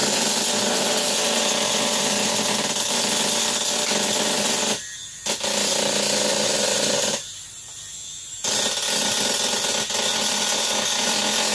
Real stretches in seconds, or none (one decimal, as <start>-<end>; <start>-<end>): 0.0-11.5